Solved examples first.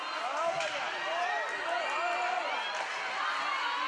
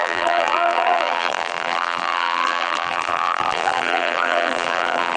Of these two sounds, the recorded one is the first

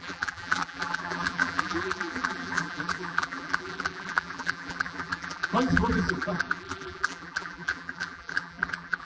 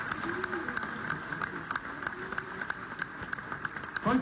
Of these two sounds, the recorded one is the second